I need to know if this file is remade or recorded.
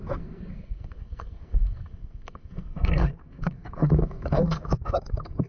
remade